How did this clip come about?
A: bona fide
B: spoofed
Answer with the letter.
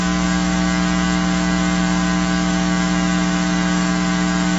B